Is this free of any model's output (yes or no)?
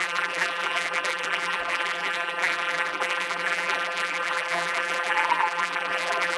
no